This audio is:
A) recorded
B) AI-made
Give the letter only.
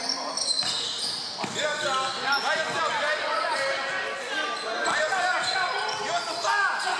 A